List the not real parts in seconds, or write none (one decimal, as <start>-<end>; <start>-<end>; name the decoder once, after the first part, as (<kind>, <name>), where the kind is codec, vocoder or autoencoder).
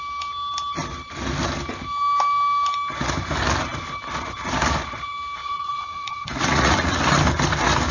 5.4-7.0 (vocoder, Vocos)